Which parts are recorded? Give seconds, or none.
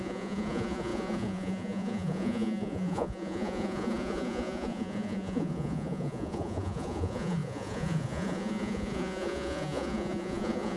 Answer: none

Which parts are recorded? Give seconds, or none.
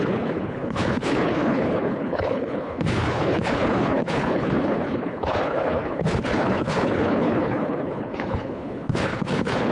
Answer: none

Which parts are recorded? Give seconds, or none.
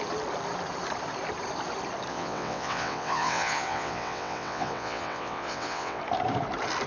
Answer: 0.0-2.1; 6.0-6.9